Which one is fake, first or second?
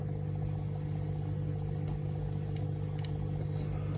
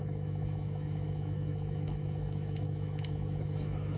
second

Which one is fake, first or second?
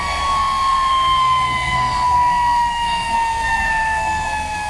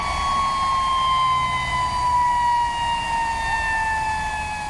first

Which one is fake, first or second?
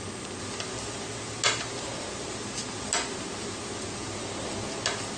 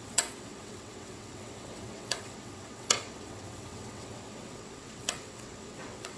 second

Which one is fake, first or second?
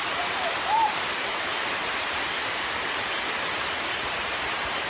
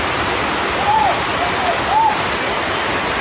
first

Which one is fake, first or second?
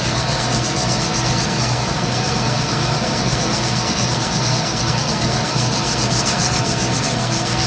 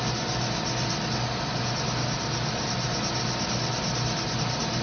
first